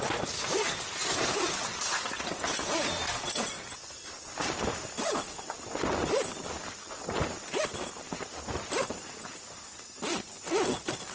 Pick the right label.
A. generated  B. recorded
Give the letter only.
B